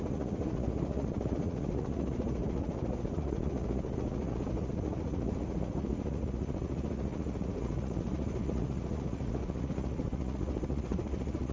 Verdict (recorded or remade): remade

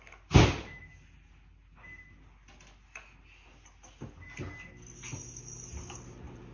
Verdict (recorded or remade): recorded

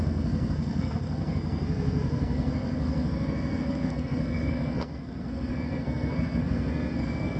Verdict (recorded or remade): remade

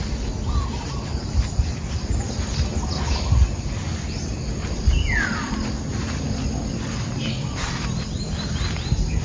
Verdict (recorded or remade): recorded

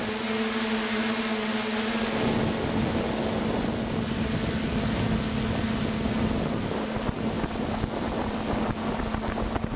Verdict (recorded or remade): recorded